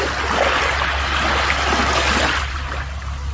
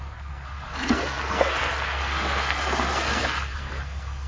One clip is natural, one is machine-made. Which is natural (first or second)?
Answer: first